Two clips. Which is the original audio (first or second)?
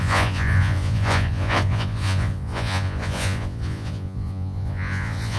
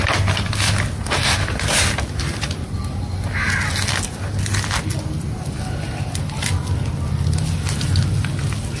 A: second